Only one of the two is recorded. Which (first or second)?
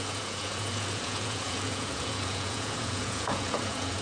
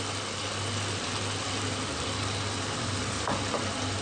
second